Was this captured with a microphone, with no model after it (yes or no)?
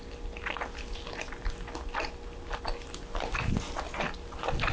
yes